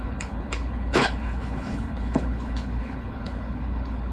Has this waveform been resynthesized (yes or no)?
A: yes